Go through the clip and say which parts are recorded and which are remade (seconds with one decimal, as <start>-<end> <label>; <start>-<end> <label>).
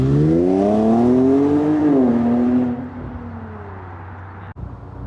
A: 0.0-5.1 recorded